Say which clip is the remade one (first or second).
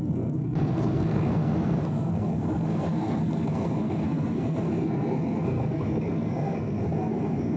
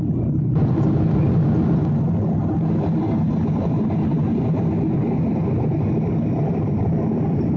first